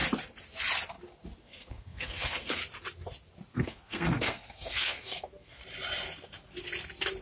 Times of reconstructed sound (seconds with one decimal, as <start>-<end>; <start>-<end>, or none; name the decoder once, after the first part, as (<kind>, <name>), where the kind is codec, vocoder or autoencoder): 1.4-2.6 (codec, SNAC); 3.5-5.6